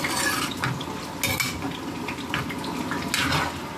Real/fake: real